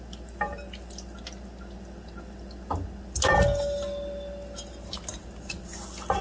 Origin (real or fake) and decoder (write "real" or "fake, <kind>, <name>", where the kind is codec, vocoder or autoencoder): real